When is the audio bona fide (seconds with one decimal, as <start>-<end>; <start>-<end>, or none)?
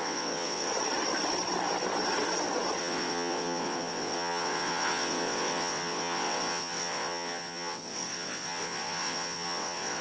0.7-2.8